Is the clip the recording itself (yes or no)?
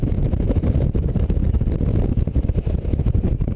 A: yes